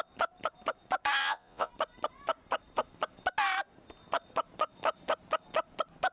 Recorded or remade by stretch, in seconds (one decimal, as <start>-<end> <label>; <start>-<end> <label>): 0.0-1.2 recorded; 1.2-1.7 remade; 1.7-6.1 recorded